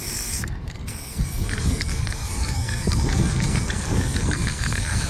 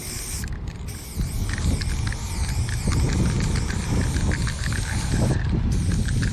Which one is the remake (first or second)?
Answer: first